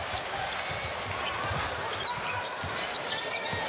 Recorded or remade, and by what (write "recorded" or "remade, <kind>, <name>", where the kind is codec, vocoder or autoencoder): recorded